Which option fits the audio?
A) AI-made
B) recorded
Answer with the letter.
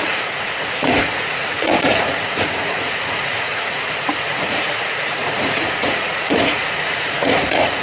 A